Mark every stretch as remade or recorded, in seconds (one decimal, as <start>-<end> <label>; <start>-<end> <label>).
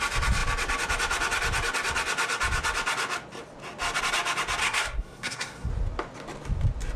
0.0-4.6 recorded; 4.6-5.7 remade; 5.7-7.0 recorded